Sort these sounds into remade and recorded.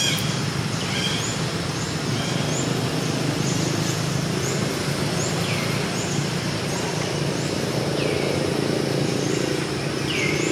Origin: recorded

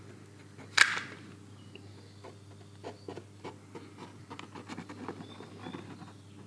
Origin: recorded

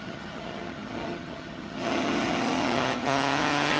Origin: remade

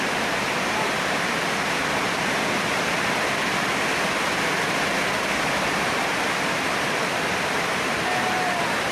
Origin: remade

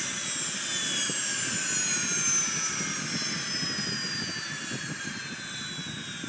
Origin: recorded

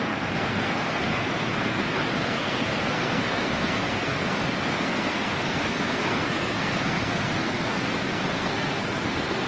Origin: remade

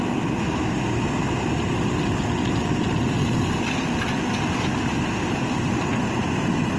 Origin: recorded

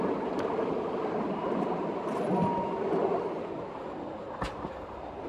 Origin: recorded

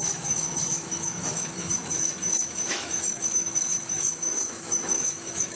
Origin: remade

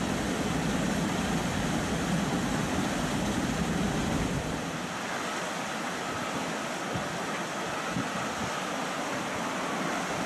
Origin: recorded